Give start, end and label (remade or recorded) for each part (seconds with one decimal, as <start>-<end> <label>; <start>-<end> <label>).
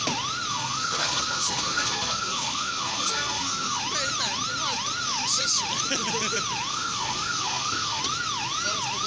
0.0-0.5 recorded; 0.5-3.8 remade; 3.8-6.7 recorded; 6.7-8.0 remade; 8.0-9.1 recorded